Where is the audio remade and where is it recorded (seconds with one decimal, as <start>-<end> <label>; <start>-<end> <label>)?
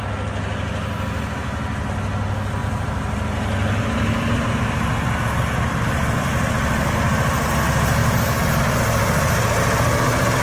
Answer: 0.0-10.4 recorded